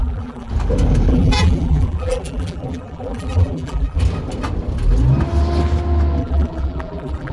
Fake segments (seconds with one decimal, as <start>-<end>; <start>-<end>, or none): 0.0-0.5; 1.1-4.0; 6.2-7.3